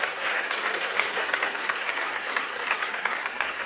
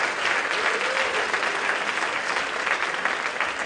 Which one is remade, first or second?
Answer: first